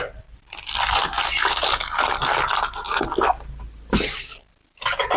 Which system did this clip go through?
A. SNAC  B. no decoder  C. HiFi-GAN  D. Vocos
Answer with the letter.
B